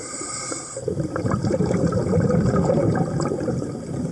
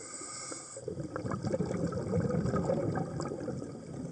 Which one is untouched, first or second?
second